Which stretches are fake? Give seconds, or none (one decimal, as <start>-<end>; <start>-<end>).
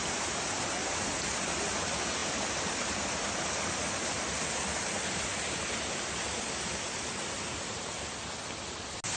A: none